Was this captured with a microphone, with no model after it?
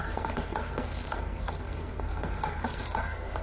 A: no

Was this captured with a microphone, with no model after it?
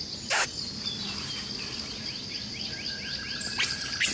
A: yes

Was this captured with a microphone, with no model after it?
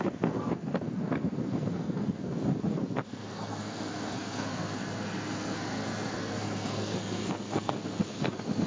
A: no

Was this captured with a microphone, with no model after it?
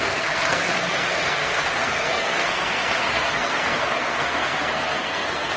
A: no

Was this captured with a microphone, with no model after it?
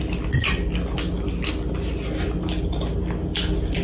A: yes